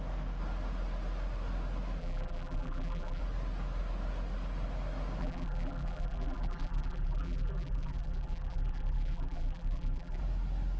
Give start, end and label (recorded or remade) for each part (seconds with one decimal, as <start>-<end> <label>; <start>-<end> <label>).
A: 0.0-2.0 recorded; 2.0-3.2 remade; 3.2-5.2 recorded; 5.2-10.2 remade; 10.2-10.8 recorded

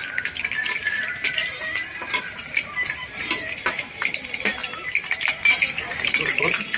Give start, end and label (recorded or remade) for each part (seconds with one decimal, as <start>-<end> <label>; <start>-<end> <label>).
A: 0.0-0.8 recorded; 0.8-1.4 remade; 1.4-2.2 recorded; 2.2-6.8 remade